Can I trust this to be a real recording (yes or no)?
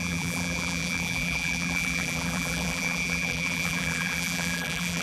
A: no